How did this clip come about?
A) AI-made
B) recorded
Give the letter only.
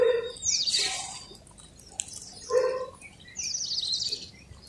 B